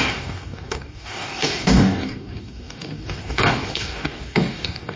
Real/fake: fake